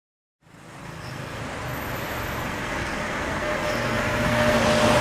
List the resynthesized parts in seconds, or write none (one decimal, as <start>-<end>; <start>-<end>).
0.8-1.4; 2.4-4.6